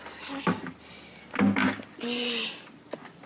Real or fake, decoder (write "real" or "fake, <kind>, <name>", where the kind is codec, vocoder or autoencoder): real